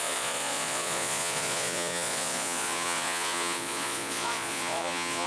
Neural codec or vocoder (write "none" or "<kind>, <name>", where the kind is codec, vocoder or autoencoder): vocoder, Vocos